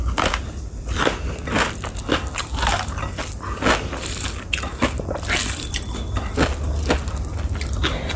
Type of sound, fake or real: real